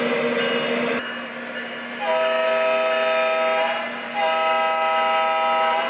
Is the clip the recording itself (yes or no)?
yes